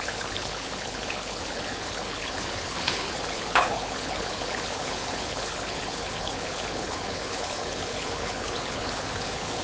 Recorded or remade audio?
remade